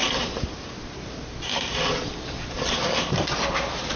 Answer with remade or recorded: recorded